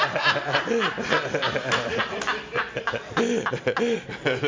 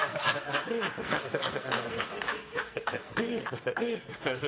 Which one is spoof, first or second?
second